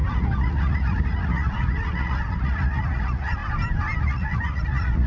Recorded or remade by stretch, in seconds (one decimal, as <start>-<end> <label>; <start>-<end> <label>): 0.0-3.4 remade; 3.4-4.0 recorded; 4.0-5.1 remade